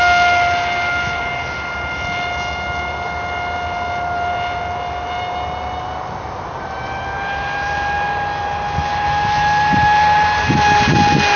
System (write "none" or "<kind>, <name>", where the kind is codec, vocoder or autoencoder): none